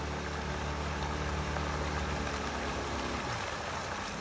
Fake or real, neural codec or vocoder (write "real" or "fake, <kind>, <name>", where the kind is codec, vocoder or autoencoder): real